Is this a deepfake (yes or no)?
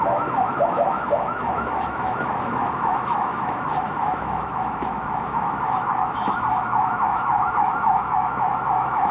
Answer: yes